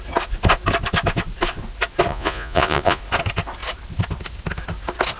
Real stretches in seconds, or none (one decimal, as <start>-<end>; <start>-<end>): 0.0-2.1; 3.0-5.2